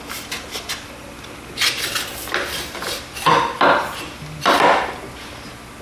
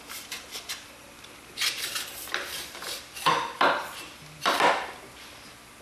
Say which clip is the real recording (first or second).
first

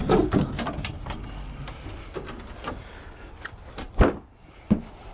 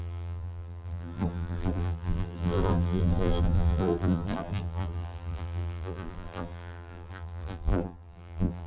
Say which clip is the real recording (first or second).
first